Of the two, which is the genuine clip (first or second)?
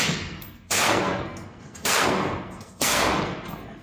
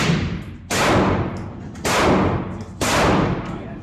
second